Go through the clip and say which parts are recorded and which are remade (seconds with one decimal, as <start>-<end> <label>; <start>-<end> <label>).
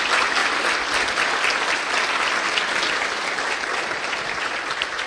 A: 0.0-5.1 recorded